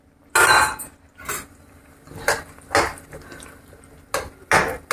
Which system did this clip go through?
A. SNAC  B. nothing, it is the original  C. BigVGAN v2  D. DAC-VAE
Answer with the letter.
B